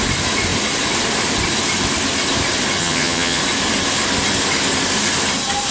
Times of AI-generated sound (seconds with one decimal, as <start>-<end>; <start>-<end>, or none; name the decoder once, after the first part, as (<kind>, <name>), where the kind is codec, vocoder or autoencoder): 2.8-3.4 (vocoder, HiFi-GAN)